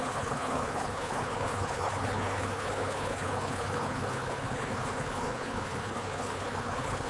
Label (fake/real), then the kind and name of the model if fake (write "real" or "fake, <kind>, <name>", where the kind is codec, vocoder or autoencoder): fake, codec, HILCodec